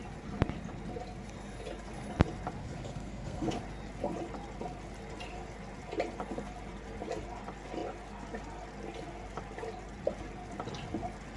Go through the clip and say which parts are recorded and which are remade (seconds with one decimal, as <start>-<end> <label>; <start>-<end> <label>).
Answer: 0.0-2.6 recorded; 2.6-3.6 remade; 3.6-11.4 recorded